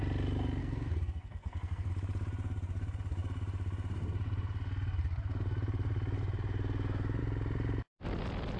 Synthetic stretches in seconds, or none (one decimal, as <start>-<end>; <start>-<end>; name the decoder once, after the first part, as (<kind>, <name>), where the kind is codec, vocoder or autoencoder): 0.6-1.9 (codec, SNAC)